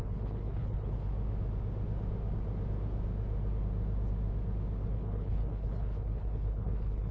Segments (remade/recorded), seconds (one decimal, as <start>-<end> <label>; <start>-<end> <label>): 0.0-1.1 remade; 1.1-4.9 recorded; 4.9-7.1 remade